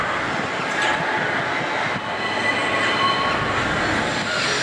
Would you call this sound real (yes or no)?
yes